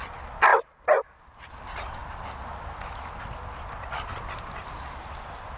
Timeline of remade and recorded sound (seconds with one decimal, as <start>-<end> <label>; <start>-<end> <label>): 0.0-5.6 recorded